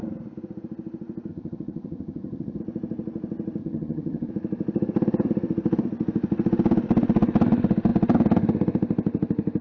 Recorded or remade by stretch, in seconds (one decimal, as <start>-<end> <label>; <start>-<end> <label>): 0.0-1.3 recorded; 1.3-2.6 remade; 2.6-3.6 recorded; 3.6-4.3 remade; 4.3-9.6 recorded